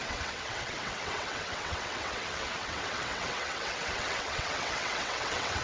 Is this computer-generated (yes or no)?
yes